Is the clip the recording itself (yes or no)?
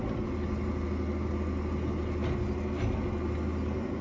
yes